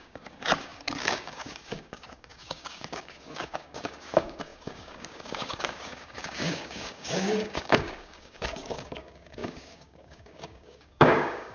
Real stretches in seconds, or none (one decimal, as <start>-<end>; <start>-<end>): none